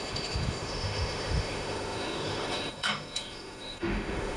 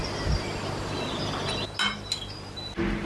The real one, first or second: second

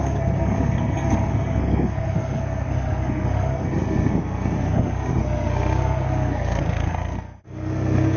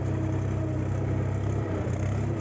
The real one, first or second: second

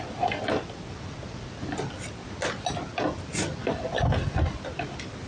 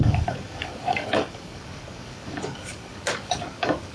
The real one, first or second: first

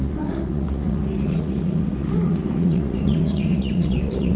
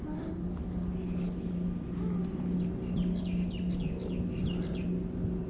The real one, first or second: second